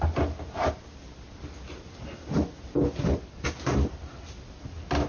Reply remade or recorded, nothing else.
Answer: recorded